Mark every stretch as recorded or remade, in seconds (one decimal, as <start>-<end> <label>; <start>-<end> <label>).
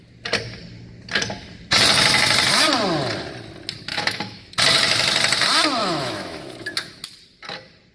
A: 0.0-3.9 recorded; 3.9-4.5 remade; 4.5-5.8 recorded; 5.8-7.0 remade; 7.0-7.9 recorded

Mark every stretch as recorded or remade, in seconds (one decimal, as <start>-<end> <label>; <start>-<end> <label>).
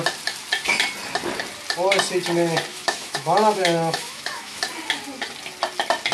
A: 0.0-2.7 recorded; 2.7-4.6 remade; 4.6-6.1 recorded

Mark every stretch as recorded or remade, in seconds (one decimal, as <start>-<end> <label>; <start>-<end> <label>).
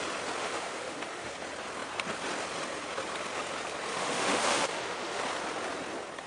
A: 0.0-0.4 recorded; 0.4-1.3 remade; 1.3-3.9 recorded; 3.9-5.2 remade; 5.2-6.3 recorded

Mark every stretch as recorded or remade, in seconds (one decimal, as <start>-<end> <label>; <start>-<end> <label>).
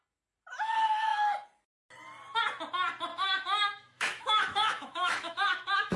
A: 0.0-3.1 recorded; 3.1-6.0 remade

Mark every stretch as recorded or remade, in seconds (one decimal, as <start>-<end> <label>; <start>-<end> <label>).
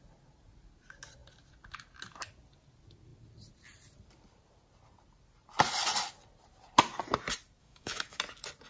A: 0.0-7.6 recorded; 7.6-8.2 remade; 8.2-8.7 recorded